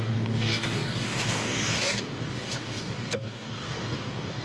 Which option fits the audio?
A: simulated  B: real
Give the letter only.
A